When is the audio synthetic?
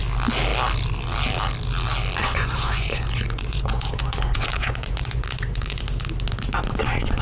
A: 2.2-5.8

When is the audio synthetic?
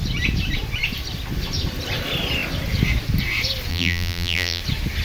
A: 3.7-4.6